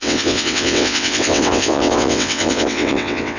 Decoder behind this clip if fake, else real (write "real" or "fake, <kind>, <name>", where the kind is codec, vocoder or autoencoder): fake, vocoder, WaveNeXt